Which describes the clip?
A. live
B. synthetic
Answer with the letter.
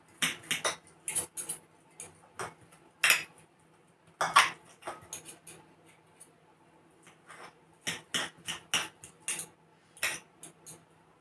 A